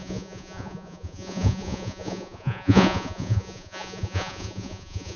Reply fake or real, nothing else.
fake